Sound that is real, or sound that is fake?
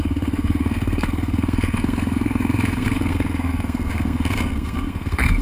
fake